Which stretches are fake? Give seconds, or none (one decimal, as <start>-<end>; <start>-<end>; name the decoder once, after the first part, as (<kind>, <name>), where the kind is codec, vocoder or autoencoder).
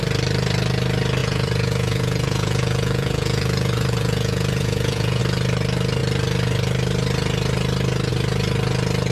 1.2-5.2 (vocoder, Vocos)